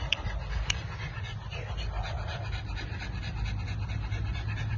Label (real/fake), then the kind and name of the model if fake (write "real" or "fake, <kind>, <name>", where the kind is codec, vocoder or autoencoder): real